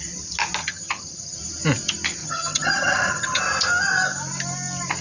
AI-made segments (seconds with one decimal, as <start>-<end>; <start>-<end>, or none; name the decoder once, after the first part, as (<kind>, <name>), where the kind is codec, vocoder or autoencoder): 0.6-1.4 (vocoder, HiFi-GAN); 2.2-3.4